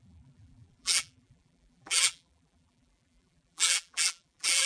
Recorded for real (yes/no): no